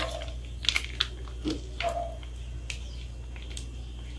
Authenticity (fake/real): real